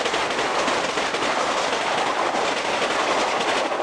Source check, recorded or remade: recorded